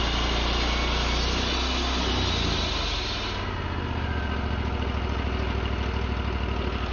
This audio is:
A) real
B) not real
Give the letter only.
A